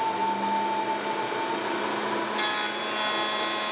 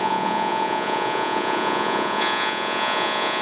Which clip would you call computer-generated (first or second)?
second